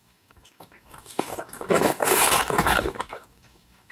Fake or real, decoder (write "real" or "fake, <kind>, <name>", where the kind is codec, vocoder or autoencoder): fake, codec, DAC